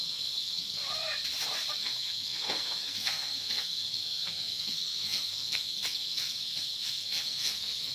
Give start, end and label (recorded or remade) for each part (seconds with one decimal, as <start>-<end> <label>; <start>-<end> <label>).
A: 0.0-0.8 remade; 0.8-1.7 recorded; 1.7-7.9 remade

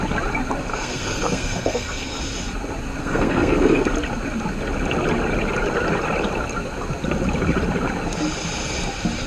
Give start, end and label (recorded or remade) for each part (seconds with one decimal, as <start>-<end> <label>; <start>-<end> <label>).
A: 0.0-0.7 recorded; 0.7-2.2 remade; 2.2-3.0 recorded; 3.0-3.8 remade; 3.8-9.3 recorded